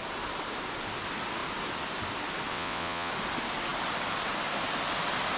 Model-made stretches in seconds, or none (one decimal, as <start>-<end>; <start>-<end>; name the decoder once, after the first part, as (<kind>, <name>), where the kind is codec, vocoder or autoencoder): 2.5-3.1 (vocoder, WaveNeXt)